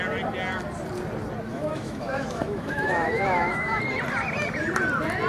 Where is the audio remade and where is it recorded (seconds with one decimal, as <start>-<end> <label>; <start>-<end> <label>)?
0.0-1.5 recorded; 1.5-3.8 remade; 3.8-5.3 recorded